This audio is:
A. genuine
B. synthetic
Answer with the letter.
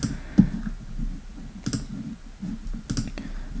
A